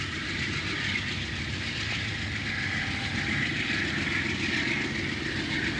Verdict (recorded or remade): recorded